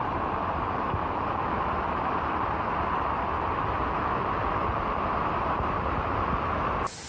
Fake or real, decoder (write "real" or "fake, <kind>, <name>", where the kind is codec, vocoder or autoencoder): real